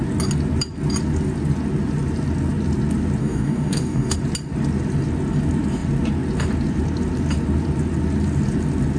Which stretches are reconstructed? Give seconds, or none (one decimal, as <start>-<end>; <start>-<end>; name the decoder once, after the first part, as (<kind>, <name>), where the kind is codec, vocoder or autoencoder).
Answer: 3.2-4.2 (codec, DAC)

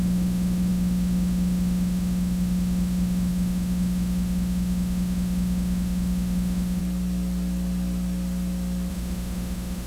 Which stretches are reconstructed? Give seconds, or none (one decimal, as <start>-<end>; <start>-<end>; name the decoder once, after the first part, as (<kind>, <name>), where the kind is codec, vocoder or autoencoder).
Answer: 0.0-6.8 (autoencoder, DAC-VAE); 8.9-9.9

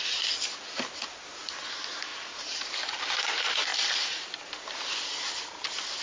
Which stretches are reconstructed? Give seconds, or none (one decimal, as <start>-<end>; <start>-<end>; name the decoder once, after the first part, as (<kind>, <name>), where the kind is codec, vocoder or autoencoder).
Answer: 2.1-2.7 (vocoder, BigVGAN v2); 3.7-4.3

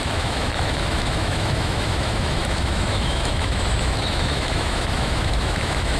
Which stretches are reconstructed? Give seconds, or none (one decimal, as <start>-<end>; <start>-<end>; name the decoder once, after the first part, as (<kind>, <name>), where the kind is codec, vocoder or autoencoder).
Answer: 0.0-6.0 (autoencoder, DAC-VAE)